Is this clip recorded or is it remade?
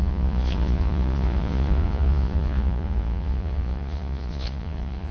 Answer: remade